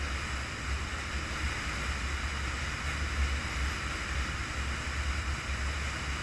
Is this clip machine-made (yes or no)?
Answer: no